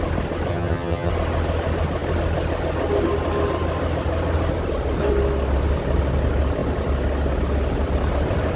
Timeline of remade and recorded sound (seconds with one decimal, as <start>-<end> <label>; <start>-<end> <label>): 0.0-0.5 recorded; 0.5-1.1 remade; 1.1-8.6 recorded